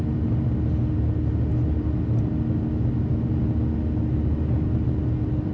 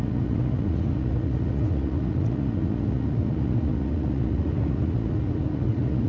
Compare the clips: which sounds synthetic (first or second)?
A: second